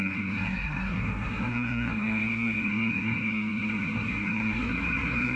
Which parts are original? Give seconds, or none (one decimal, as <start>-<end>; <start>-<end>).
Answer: none